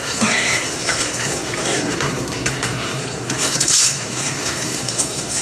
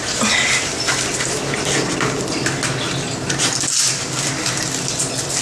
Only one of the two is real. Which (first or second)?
second